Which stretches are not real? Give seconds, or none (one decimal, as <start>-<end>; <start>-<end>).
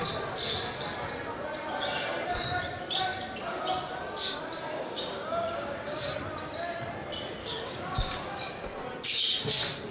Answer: 4.7-6.0; 7.4-8.4